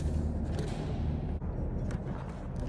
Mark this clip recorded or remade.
recorded